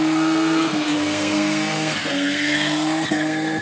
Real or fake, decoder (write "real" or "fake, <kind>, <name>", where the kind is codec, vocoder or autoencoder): fake, codec, SNAC